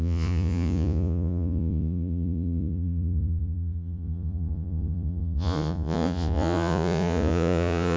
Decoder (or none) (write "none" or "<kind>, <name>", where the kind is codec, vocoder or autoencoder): vocoder, Vocos